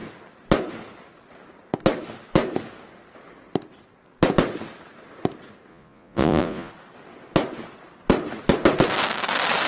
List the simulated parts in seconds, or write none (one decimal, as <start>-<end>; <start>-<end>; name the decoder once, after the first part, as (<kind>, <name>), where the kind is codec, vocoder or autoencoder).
5.7-6.7 (vocoder, Vocos)